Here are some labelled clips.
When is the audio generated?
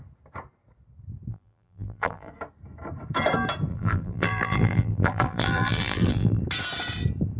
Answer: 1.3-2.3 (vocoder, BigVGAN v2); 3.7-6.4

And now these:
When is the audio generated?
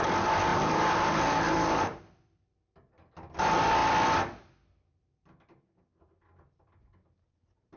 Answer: 0.5-2.0 (vocoder, BigVGAN v2)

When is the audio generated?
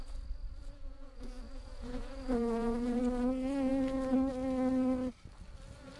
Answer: 0.6-3.0 (vocoder, Vocos)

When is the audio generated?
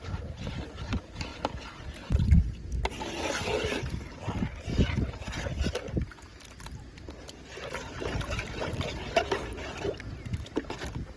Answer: none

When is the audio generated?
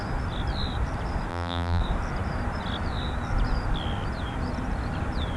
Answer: 1.3-1.8 (vocoder, BigVGAN v2)